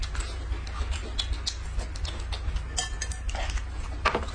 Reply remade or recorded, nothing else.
recorded